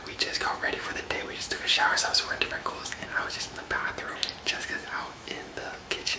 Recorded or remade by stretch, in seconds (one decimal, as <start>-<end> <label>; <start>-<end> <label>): 0.0-3.8 remade; 3.8-4.4 recorded; 4.4-6.2 remade